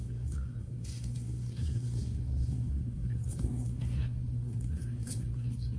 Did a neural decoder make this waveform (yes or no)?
yes